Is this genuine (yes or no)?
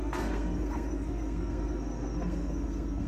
no